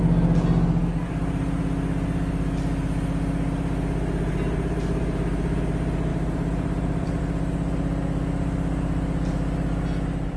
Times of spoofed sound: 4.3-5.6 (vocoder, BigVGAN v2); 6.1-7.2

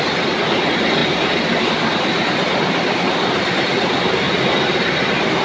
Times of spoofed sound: 1.0-4.2 (vocoder, BigVGAN v2)

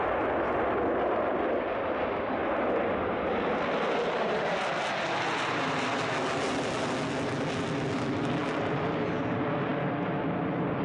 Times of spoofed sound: none

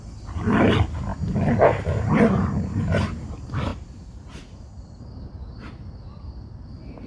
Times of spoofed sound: 3.7-5.0 (vocoder, BigVGAN v2)

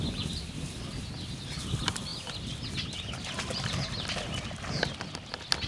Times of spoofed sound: 0.0-2.1 (vocoder, BigVGAN v2); 5.3-5.7

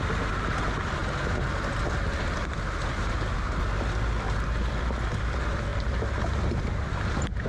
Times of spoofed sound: none